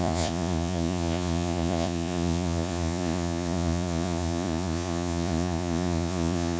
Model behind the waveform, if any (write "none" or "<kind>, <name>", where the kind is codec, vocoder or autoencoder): vocoder, Vocos